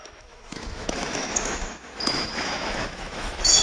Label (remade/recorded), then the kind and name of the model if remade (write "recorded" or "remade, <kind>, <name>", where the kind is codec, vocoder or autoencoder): remade, autoencoder, DAC-VAE